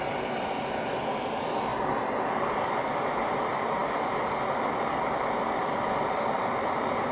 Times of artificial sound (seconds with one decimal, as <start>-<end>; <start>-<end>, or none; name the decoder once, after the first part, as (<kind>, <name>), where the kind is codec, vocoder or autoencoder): none